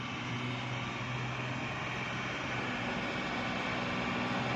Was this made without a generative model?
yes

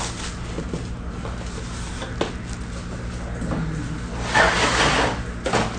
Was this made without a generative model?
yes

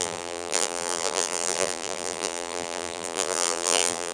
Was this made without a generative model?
no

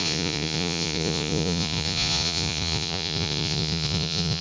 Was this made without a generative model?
no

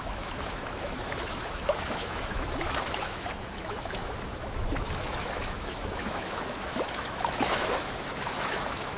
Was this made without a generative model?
no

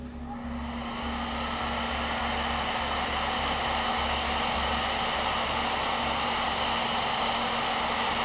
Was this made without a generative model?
yes